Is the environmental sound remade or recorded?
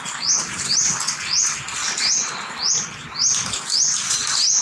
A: recorded